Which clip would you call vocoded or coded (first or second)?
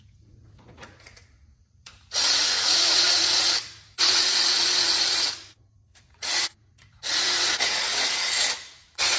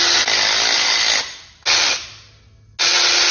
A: first